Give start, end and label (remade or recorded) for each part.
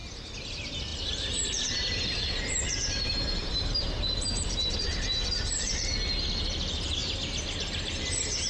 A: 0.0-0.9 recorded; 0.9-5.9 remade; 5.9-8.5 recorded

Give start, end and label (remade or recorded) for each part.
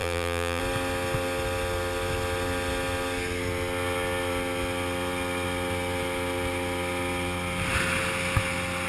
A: 0.0-0.6 remade; 0.6-8.9 recorded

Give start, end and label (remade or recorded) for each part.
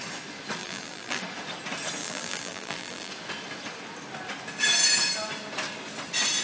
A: 0.0-0.6 recorded; 0.6-1.2 remade; 1.2-2.0 recorded; 2.0-3.1 remade; 3.1-6.4 recorded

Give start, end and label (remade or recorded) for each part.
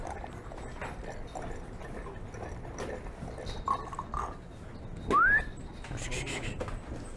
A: 0.0-7.2 recorded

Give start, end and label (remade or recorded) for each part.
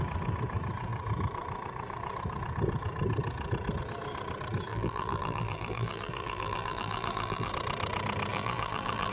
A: 0.0-4.7 recorded; 4.7-7.5 remade; 7.5-8.3 recorded; 8.3-9.1 remade